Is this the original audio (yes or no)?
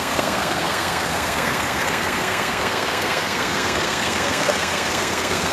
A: no